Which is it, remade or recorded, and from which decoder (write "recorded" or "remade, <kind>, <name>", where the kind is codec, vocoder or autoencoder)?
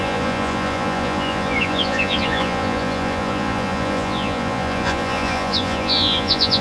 remade, vocoder, Vocos